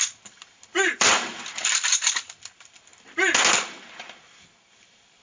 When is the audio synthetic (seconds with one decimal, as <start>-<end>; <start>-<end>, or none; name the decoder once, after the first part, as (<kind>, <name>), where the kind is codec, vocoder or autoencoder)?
0.0-2.9 (vocoder, BigVGAN v2); 3.5-5.2